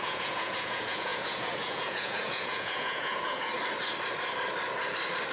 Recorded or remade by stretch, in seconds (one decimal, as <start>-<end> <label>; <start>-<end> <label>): 0.0-3.5 remade; 3.5-5.3 recorded